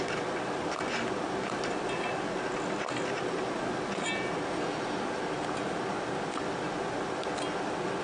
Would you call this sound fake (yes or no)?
no